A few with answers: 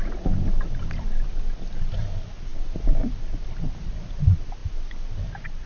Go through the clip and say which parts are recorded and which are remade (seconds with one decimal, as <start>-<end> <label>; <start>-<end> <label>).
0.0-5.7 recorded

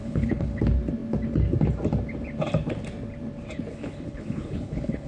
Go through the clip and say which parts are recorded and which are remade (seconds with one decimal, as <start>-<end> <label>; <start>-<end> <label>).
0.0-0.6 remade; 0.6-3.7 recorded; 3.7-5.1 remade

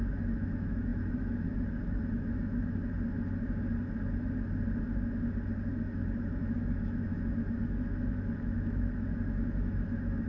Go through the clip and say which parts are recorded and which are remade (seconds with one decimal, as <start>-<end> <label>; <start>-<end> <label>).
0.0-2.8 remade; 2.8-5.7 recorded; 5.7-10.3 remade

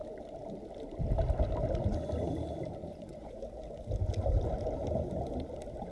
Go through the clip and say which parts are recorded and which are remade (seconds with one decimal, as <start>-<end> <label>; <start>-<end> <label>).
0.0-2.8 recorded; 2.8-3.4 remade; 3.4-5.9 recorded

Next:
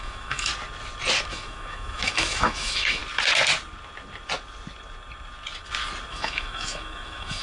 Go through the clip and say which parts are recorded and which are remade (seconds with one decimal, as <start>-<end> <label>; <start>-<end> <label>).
0.0-0.5 remade; 0.5-1.3 recorded; 1.3-3.0 remade; 3.0-6.1 recorded; 6.1-7.4 remade